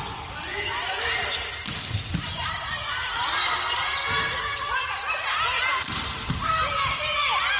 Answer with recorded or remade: recorded